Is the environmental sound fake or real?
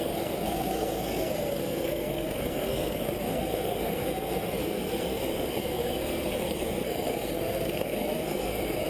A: fake